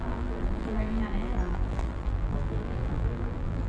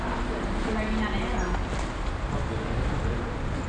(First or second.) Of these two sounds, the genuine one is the second